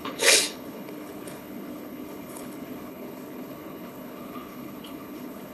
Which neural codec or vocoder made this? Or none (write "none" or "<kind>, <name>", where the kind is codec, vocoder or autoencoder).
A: codec, HILCodec